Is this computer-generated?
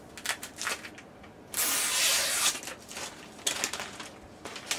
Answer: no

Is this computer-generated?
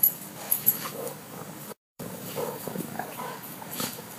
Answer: yes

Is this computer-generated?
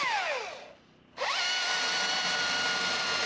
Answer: no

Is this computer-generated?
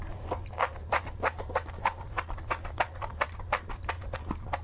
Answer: no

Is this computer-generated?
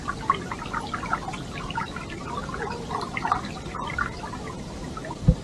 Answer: no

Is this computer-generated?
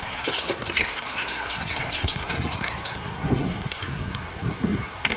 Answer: yes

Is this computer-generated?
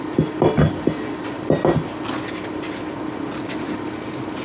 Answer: no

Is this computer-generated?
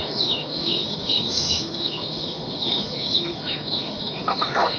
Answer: yes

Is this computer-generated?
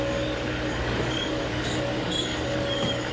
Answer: yes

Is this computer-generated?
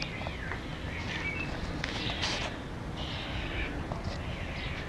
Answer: no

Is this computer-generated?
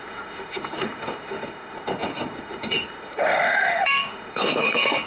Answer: yes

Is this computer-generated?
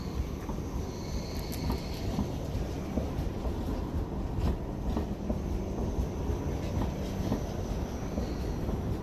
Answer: no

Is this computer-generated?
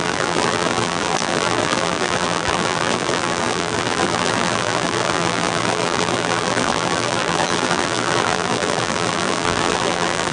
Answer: yes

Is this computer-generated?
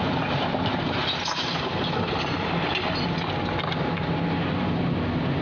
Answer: no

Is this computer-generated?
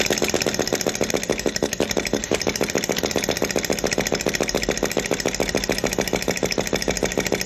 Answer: no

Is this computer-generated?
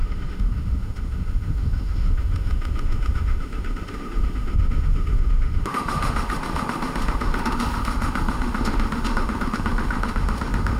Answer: yes